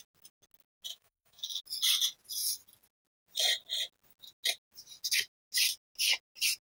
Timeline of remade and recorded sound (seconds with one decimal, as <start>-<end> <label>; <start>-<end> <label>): 0.0-0.9 recorded; 0.9-1.6 remade; 1.6-6.7 recorded